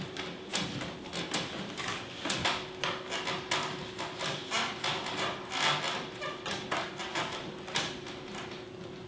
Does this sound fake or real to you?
real